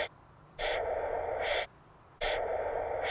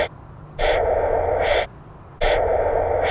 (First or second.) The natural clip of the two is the second